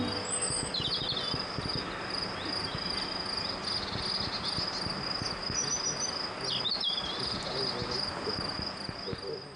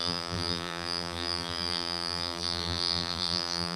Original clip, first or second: first